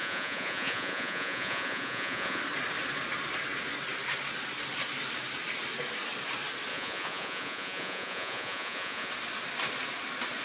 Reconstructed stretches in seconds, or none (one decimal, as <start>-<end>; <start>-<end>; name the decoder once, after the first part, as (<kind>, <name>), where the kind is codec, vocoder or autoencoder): 0.0-2.4 (vocoder, Vocos); 6.7-9.1